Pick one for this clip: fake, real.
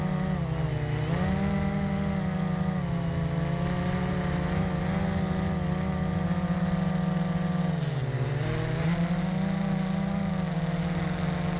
real